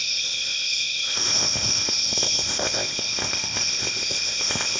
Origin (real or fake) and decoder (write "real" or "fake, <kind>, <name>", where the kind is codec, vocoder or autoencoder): fake, codec, ZipCodec